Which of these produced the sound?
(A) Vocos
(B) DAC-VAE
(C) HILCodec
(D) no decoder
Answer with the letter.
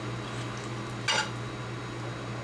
D